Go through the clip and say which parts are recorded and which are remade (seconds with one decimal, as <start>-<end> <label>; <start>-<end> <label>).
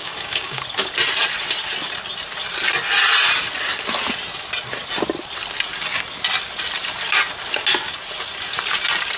0.0-0.6 remade; 0.6-9.2 recorded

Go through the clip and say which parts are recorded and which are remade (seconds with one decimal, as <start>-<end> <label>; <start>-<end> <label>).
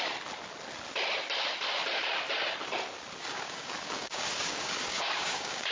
0.0-3.3 recorded; 3.3-5.7 remade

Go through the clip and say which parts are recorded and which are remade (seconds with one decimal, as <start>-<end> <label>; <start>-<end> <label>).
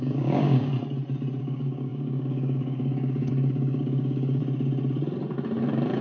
0.0-0.7 remade; 0.7-1.4 recorded; 1.4-4.4 remade; 4.4-6.0 recorded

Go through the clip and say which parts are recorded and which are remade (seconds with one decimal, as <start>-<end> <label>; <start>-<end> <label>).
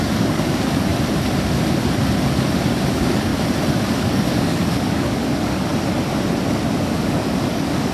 0.0-0.9 remade; 0.9-2.9 recorded; 2.9-3.3 remade; 3.3-3.9 recorded; 3.9-5.7 remade; 5.7-6.8 recorded; 6.8-7.9 remade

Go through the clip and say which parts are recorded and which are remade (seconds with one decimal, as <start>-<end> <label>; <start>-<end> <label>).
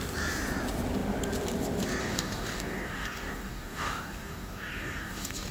0.0-2.0 recorded; 2.0-5.5 remade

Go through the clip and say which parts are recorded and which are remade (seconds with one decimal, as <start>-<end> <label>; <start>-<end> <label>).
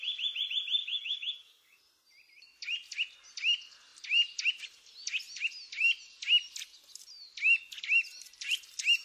0.0-0.8 recorded; 0.8-1.8 remade; 1.8-9.0 recorded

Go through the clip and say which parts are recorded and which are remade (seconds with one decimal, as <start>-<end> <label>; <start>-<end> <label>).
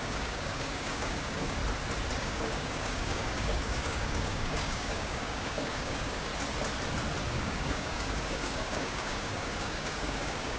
0.0-1.6 remade; 1.6-2.2 recorded; 2.2-6.3 remade; 6.3-7.3 recorded; 7.3-10.6 remade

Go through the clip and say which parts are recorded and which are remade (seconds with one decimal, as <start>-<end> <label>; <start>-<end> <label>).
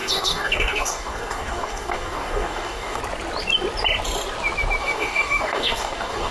0.0-3.0 remade; 3.0-4.8 recorded; 4.8-6.3 remade